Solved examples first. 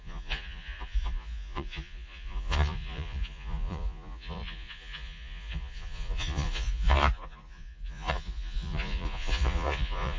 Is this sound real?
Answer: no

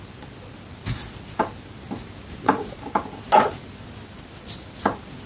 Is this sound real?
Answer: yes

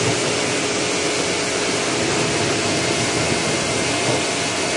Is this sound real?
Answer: yes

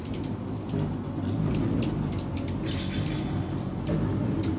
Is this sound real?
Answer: yes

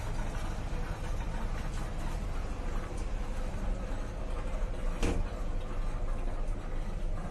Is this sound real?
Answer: yes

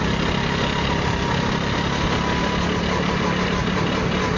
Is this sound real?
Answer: yes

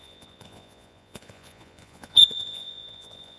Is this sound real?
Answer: no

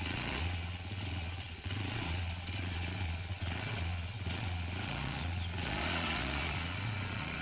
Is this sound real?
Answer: no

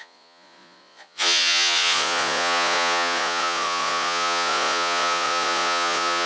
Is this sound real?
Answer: no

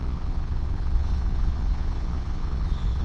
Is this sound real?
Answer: no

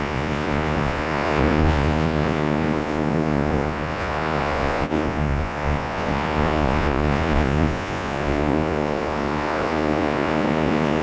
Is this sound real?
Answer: no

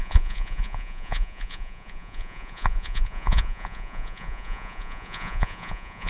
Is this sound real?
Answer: no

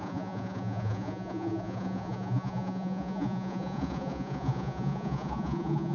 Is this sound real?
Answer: no